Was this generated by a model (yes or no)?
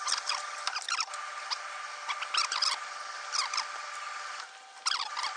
no